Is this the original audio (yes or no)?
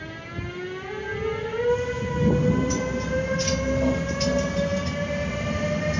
yes